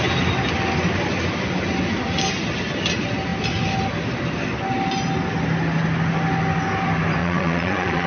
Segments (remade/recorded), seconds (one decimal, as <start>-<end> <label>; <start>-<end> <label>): 0.0-7.2 recorded; 7.2-8.1 remade